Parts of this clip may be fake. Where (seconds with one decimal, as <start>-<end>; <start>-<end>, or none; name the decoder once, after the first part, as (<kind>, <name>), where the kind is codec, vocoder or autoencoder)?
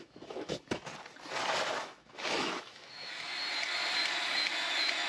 0.0-0.9 (autoencoder, DAC-VAE); 1.8-3.4; 4.1-5.1